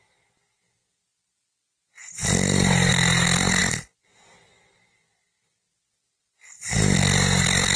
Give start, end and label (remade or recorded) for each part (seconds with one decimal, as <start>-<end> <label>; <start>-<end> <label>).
0.0-7.8 recorded